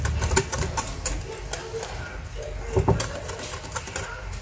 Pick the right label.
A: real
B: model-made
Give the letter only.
A